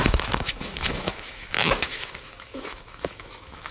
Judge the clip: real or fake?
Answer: fake